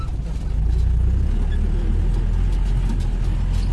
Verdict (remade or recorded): recorded